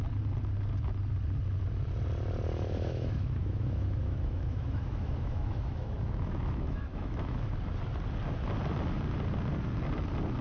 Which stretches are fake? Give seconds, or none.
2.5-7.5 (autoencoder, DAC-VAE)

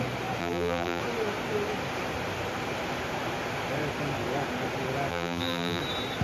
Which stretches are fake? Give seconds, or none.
0.4-1.0 (vocoder, BigVGAN v2); 5.1-5.8

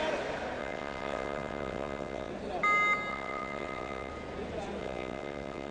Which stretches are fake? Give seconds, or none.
0.6-2.3 (vocoder, WaveNeXt); 3.1-4.1; 4.8-5.7

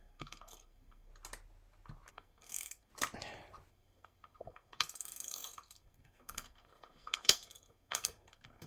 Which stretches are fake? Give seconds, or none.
0.0-1.1 (codec, SNAC); 2.1-2.9; 3.7-8.7

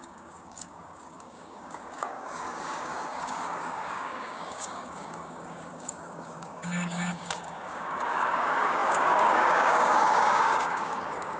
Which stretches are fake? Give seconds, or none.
0.0-11.4 (codec, DAC)

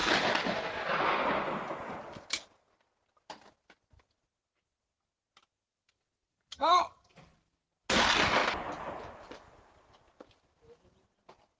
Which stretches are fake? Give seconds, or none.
6.5-7.1 (vocoder, HiFi-GAN)